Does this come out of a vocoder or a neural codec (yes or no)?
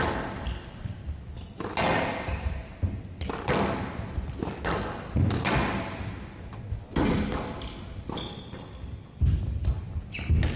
no